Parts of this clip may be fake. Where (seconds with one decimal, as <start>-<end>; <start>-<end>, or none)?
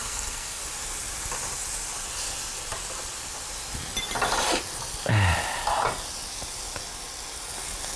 0.0-0.6